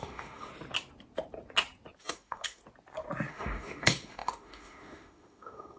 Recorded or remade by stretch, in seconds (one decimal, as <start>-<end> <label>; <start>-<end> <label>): 0.0-0.5 remade; 0.5-2.0 recorded; 2.0-2.6 remade; 2.6-3.3 recorded; 3.3-5.8 remade